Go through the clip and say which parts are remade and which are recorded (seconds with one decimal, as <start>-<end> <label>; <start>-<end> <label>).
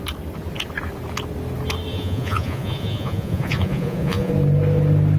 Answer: 0.0-1.9 recorded; 1.9-4.3 remade; 4.3-5.2 recorded